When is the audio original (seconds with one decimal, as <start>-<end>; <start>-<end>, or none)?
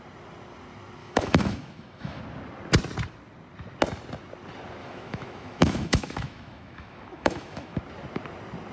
0.0-1.0; 2.2-4.8; 7.8-8.7